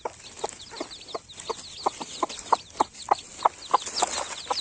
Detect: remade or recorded recorded